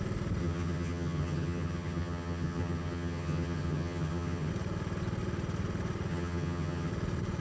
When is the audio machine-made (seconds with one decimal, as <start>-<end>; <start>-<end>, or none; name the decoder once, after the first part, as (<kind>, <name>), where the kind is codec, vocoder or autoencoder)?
0.4-4.5 (vocoder, HiFi-GAN); 6.1-6.9